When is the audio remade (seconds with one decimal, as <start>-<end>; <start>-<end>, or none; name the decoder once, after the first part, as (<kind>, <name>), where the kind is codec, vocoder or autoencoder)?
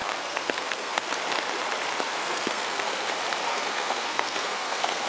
0.0-1.1 (codec, SNAC); 2.1-3.1; 3.5-5.1